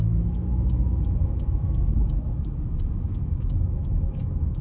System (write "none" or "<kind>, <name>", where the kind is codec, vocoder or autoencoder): autoencoder, DAC-VAE